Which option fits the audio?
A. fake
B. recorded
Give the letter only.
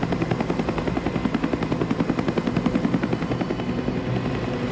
B